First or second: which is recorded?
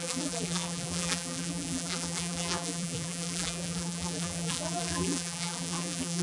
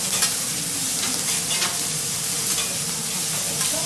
second